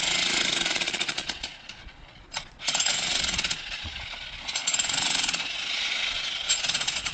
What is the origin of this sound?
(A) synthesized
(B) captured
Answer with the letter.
A